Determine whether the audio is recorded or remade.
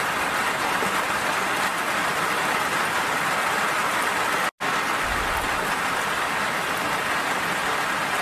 recorded